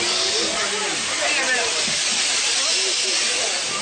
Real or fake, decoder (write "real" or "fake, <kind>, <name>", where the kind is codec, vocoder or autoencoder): real